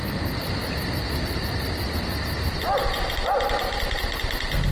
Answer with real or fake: real